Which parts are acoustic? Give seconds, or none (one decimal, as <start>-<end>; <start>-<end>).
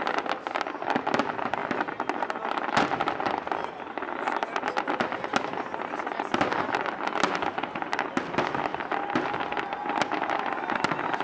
0.0-11.2